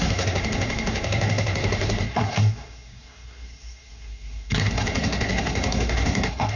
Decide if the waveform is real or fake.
fake